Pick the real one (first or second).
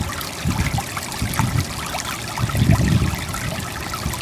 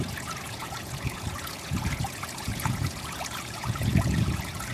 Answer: first